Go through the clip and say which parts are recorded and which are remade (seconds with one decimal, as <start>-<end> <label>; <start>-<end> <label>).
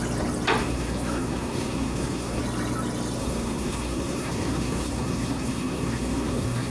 0.0-0.6 recorded; 0.6-2.4 remade; 2.4-3.2 recorded; 3.2-6.7 remade